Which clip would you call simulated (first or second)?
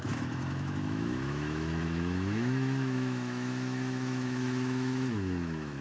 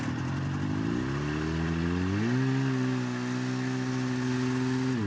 first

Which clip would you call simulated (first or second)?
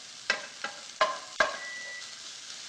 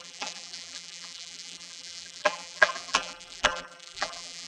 second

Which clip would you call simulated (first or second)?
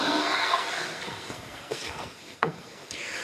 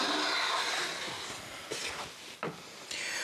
first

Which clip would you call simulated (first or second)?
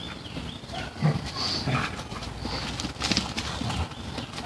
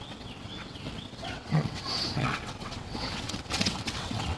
second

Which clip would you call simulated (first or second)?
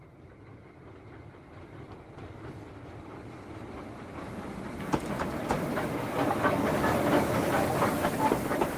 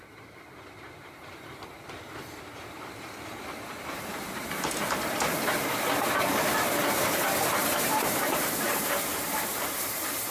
second